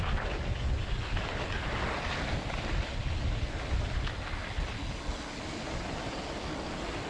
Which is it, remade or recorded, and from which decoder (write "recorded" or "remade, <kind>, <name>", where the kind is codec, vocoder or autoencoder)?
recorded